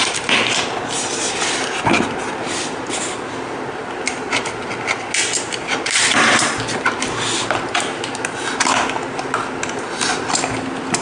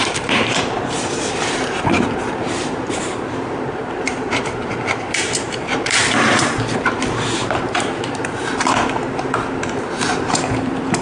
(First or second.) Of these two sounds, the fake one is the second